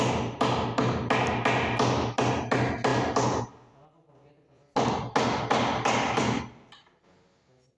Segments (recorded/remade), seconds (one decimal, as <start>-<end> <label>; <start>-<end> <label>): 0.0-7.8 recorded